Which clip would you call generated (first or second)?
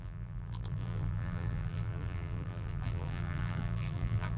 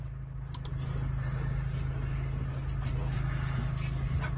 first